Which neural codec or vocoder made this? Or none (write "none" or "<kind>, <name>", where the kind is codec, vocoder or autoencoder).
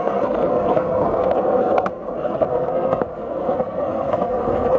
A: codec, SNAC